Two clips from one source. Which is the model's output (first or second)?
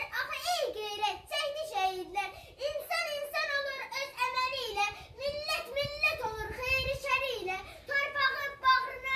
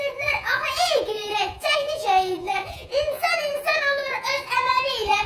second